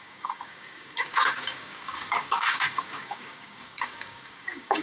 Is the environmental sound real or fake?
fake